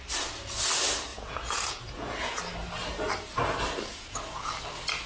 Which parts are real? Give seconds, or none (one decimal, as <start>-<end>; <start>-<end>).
0.0-1.1; 2.4-3.9; 4.5-5.1